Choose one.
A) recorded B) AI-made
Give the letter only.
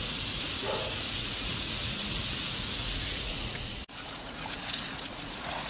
B